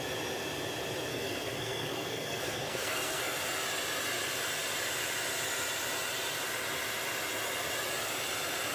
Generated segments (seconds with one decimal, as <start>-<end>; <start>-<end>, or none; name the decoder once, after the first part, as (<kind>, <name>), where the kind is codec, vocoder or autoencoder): 1.1-3.4 (codec, SNAC)